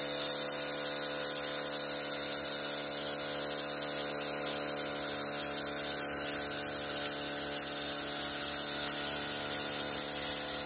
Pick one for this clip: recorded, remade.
recorded